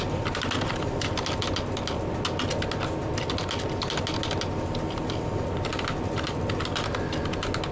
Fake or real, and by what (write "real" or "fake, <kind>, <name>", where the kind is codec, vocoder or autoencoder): real